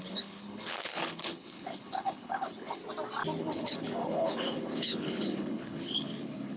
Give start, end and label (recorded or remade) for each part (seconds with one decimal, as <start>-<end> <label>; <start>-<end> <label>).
0.0-2.8 remade; 2.8-3.4 recorded; 3.4-6.6 remade